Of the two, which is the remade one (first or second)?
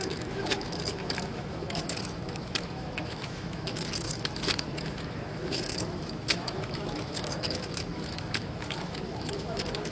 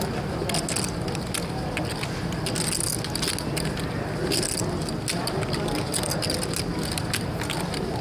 first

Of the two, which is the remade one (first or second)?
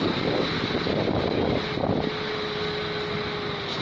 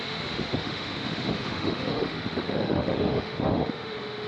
second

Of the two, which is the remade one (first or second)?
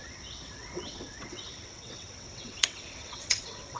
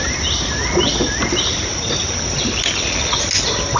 first